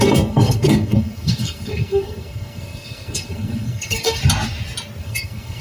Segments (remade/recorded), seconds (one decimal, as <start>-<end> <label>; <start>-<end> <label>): 0.0-4.2 remade; 4.2-5.0 recorded; 5.0-5.6 remade